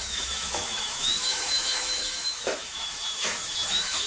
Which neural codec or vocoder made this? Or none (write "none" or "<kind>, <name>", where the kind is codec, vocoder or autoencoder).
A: autoencoder, DAC-VAE